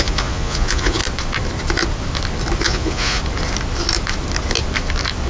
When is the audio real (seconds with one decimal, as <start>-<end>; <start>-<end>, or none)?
1.0-2.6; 3.2-5.3